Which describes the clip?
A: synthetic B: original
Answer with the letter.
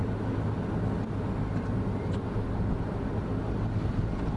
B